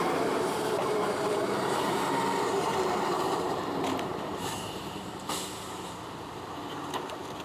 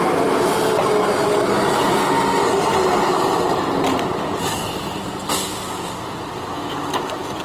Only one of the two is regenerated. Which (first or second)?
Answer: first